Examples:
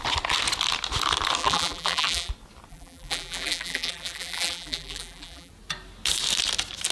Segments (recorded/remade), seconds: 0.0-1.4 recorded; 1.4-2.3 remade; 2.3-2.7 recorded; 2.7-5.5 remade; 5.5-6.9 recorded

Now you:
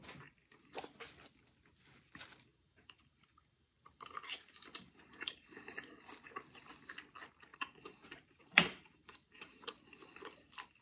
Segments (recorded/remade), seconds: 0.0-2.5 recorded; 2.5-6.0 remade; 6.0-7.5 recorded; 7.5-9.7 remade; 9.7-10.8 recorded